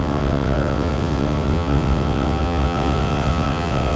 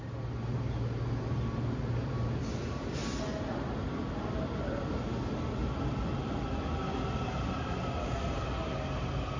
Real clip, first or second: second